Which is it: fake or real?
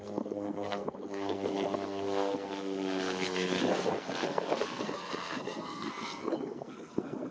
fake